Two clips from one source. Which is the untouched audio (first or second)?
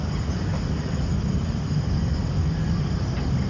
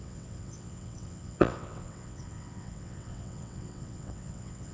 first